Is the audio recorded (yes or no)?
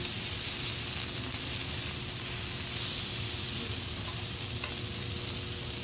yes